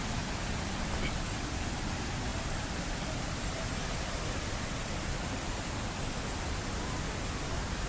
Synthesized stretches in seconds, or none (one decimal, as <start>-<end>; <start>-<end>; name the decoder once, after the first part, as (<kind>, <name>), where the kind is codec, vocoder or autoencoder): 2.3-6.4 (vocoder, BigVGAN v2)